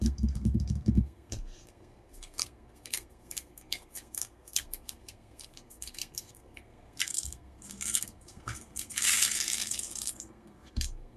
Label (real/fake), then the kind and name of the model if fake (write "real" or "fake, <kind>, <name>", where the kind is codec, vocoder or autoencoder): fake, codec, SNAC